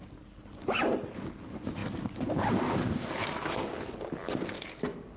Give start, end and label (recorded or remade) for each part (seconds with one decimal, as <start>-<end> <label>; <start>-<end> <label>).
0.0-5.2 recorded